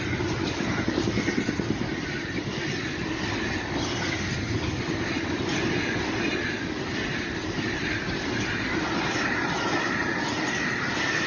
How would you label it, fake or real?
real